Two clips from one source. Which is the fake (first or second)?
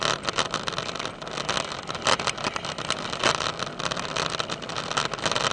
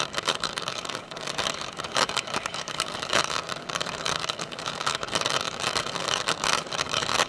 second